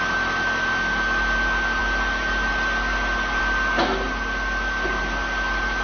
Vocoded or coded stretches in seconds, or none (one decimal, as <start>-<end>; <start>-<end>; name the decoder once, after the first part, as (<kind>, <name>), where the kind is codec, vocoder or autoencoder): none